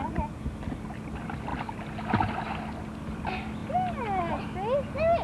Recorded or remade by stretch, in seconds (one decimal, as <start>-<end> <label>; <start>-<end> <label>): 0.0-5.2 recorded